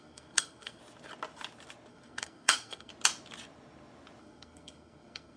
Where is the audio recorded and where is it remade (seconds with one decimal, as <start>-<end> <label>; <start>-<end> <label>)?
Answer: 0.0-0.8 remade; 0.8-1.9 recorded; 1.9-2.9 remade; 2.9-4.2 recorded; 4.2-5.4 remade